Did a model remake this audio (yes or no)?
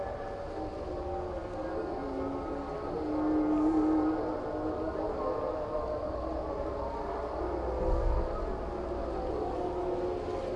no